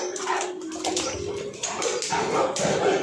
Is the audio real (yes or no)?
yes